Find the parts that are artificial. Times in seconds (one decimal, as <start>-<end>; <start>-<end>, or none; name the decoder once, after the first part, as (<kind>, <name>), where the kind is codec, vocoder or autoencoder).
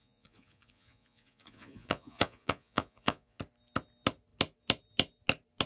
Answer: 0.0-3.4 (vocoder, Vocos)